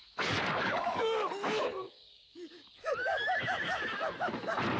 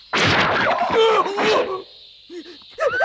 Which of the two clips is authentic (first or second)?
second